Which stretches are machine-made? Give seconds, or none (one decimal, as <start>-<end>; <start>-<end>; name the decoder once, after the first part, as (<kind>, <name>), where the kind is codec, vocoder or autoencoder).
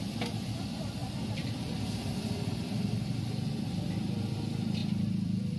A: 1.0-3.3 (vocoder, BigVGAN v2); 4.8-5.6